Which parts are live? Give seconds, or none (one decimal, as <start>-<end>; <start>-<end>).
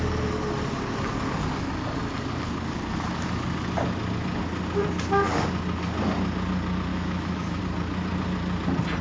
0.0-6.9; 7.6-9.0